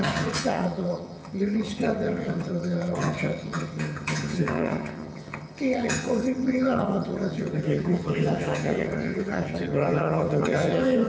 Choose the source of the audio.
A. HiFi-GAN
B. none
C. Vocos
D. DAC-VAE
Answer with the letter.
A